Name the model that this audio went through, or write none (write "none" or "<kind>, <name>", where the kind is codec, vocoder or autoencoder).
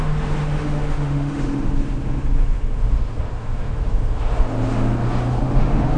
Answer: autoencoder, DAC-VAE